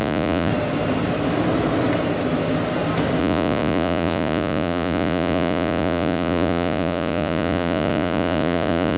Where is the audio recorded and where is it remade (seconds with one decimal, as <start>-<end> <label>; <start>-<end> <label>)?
0.0-0.5 remade; 0.5-3.2 recorded; 3.2-9.0 remade